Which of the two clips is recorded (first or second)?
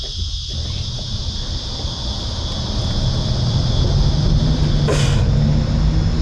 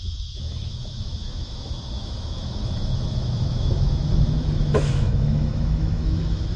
first